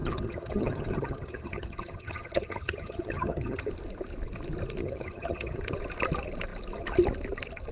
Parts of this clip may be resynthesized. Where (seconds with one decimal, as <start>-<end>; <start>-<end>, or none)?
0.0-3.7; 4.8-5.6